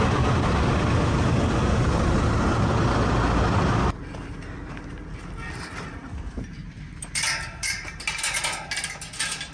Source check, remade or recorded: recorded